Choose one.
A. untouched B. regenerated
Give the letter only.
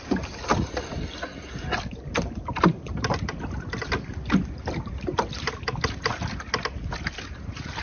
A